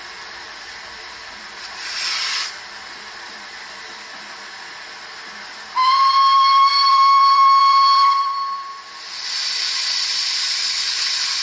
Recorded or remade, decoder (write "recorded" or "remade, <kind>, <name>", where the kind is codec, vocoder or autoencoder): remade, vocoder, BigVGAN v2